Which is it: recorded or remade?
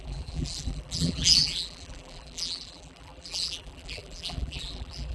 remade